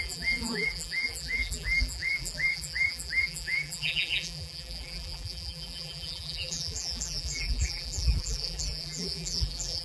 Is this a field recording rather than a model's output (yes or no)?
no